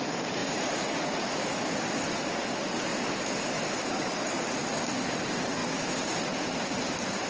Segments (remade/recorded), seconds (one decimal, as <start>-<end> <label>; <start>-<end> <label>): 0.0-0.4 recorded; 0.4-0.9 remade; 0.9-2.9 recorded; 2.9-3.9 remade; 3.9-5.6 recorded; 5.6-6.6 remade; 6.6-7.3 recorded